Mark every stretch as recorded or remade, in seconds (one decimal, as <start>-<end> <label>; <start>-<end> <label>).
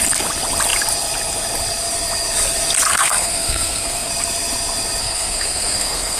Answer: 0.0-2.9 recorded; 2.9-4.1 remade; 4.1-5.0 recorded; 5.0-6.2 remade